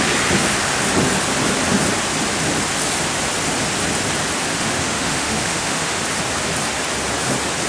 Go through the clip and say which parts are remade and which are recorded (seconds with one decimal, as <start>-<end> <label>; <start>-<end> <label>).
0.0-4.5 recorded; 4.5-6.0 remade; 6.0-7.7 recorded